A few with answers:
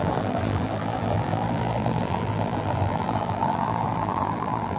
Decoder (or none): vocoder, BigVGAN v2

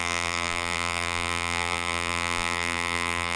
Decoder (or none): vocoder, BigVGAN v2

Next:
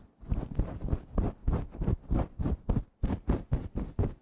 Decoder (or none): none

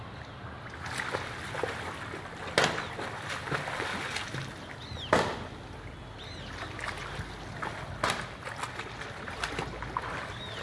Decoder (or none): none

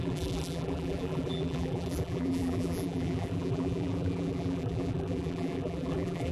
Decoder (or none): vocoder, BigVGAN v2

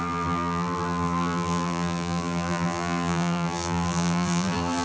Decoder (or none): vocoder, BigVGAN v2